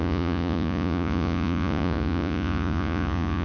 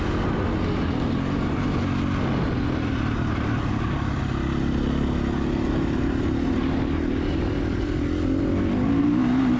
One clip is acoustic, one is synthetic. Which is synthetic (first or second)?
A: first